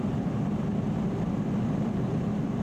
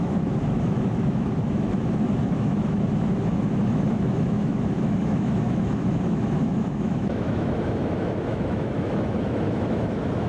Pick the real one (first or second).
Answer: first